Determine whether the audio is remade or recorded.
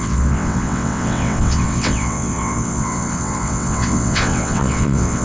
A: remade